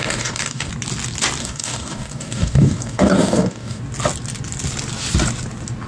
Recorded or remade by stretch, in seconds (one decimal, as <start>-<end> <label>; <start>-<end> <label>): 0.0-0.7 remade; 0.7-1.4 recorded; 1.4-3.8 remade; 3.8-5.9 recorded